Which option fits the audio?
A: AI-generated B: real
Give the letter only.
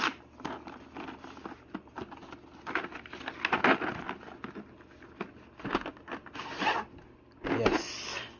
B